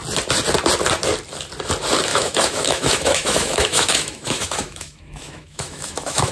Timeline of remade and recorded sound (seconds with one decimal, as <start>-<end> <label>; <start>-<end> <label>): 0.0-2.1 recorded; 2.1-6.3 remade